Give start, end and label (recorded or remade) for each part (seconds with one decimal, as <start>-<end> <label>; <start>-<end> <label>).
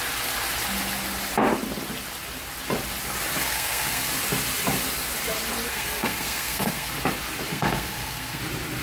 0.0-3.4 recorded; 3.4-4.1 remade; 4.1-5.7 recorded; 5.7-6.9 remade; 6.9-7.5 recorded; 7.5-8.4 remade; 8.4-8.8 recorded